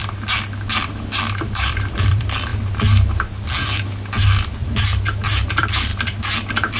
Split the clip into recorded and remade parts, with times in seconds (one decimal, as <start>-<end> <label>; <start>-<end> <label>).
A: 0.0-1.2 recorded; 1.2-2.5 remade; 2.5-5.5 recorded; 5.5-5.9 remade; 5.9-6.8 recorded

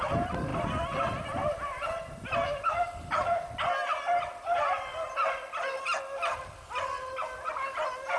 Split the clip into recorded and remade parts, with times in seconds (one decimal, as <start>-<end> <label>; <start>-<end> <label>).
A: 0.0-8.2 recorded

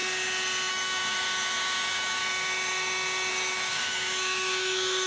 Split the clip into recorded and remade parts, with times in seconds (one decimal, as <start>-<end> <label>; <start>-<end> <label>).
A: 0.0-0.7 recorded; 0.7-2.2 remade; 2.2-3.3 recorded; 3.3-5.1 remade

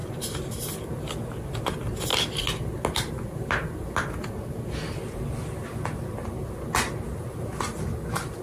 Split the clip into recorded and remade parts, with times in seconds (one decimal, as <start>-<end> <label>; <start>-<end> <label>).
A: 0.0-8.4 recorded

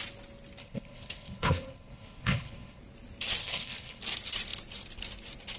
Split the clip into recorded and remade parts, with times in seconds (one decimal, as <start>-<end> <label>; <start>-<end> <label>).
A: 0.0-0.6 recorded; 0.6-2.8 remade; 2.8-3.4 recorded; 3.4-4.0 remade; 4.0-5.6 recorded

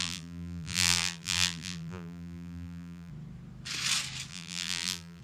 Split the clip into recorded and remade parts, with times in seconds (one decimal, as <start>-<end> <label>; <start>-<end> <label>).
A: 0.0-3.1 remade; 3.1-4.3 recorded; 4.3-5.2 remade

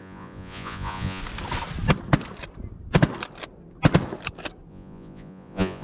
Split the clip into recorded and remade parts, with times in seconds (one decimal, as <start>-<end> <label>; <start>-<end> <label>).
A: 0.0-1.2 remade; 1.2-4.7 recorded; 4.7-5.8 remade

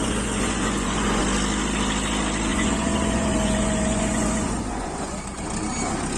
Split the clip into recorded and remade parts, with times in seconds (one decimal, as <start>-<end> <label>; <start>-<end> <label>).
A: 0.0-1.2 remade; 1.2-2.5 recorded; 2.5-5.4 remade; 5.4-6.2 recorded